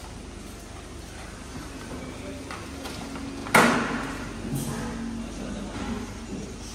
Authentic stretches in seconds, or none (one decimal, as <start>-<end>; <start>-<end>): 0.0-6.7